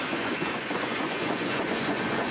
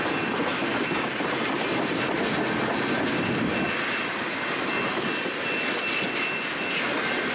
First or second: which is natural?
second